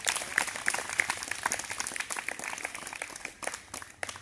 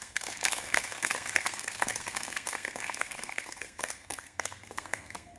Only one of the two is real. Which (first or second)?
first